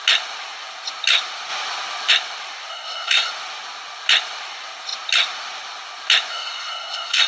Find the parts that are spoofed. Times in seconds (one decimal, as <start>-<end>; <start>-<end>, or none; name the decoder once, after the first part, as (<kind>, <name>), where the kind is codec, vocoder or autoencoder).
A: 2.7-3.3 (codec, SNAC); 6.3-7.3